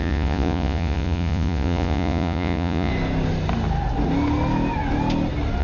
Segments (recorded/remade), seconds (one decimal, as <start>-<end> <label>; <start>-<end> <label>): 0.0-2.9 remade; 2.9-5.6 recorded